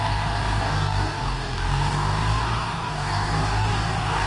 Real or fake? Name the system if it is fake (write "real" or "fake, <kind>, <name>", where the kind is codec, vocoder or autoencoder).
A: fake, codec, DAC